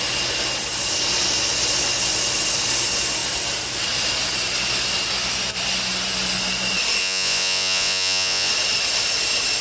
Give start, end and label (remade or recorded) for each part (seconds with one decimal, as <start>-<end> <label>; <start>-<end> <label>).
0.0-7.0 recorded; 7.0-8.5 remade; 8.5-9.6 recorded